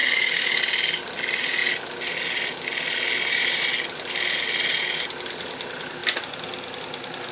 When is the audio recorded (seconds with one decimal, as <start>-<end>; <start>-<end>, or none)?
0.6-7.3